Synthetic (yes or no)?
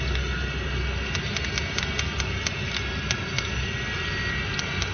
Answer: no